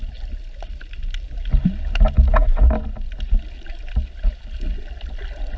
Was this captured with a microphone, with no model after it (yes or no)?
yes